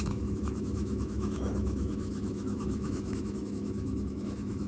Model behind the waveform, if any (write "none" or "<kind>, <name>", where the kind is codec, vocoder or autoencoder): autoencoder, DAC-VAE